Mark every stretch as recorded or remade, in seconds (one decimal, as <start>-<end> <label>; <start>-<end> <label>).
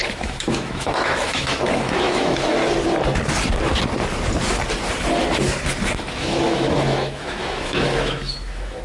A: 0.0-2.6 remade; 2.6-6.2 recorded; 6.2-8.8 remade